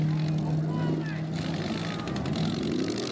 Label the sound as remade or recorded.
recorded